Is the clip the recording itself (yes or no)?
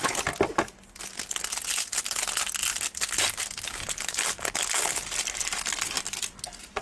yes